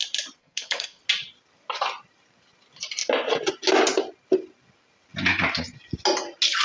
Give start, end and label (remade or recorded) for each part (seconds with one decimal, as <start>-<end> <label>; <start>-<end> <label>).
0.0-0.4 recorded; 0.4-1.0 remade; 1.0-6.6 recorded